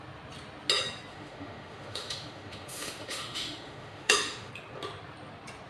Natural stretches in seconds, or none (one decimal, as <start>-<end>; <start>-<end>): 0.0-1.1; 4.5-5.7